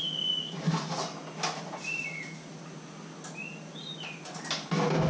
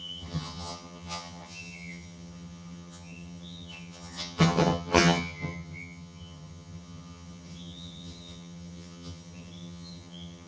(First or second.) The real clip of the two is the first